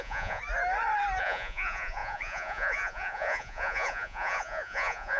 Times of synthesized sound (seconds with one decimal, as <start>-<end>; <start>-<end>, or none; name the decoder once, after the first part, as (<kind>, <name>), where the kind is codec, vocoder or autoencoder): 0.0-0.4 (vocoder, Vocos); 1.2-5.2